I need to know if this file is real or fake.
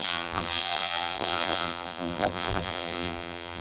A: fake